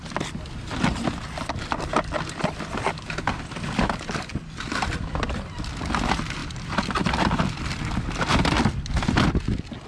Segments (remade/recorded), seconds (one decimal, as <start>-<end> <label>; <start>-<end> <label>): 0.0-9.9 recorded